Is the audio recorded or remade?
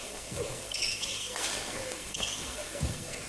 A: remade